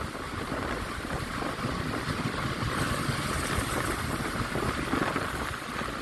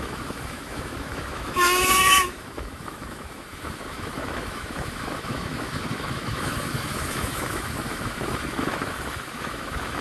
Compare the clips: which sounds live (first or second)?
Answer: first